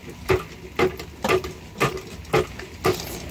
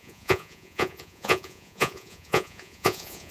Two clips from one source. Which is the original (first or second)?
first